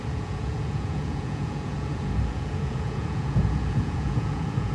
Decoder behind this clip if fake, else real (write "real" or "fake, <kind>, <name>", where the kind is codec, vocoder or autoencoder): fake, vocoder, Vocos